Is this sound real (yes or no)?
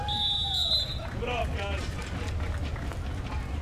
yes